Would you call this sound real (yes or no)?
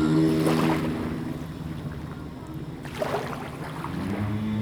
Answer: yes